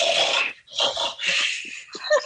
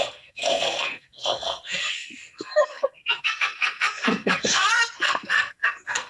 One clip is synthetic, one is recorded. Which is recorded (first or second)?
first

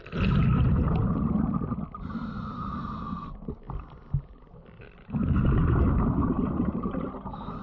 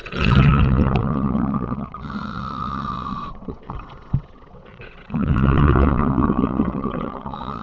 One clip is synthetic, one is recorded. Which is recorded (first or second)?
first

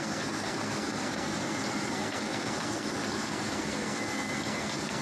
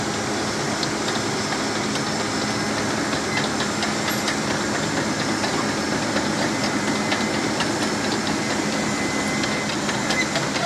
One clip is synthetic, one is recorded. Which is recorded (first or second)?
second